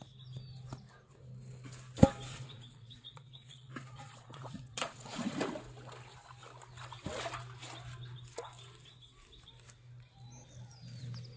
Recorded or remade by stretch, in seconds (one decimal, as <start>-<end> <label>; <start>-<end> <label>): 0.0-2.3 recorded; 2.3-5.3 remade; 5.3-11.4 recorded